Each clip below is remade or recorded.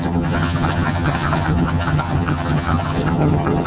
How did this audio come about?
remade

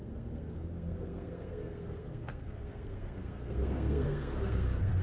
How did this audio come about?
remade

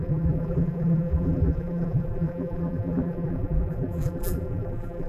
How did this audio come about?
remade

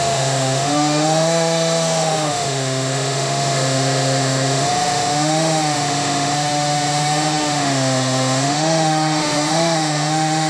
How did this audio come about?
remade